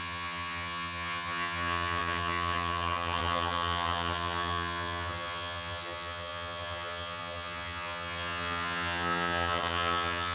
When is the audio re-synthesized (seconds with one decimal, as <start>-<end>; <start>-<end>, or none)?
0.0-10.3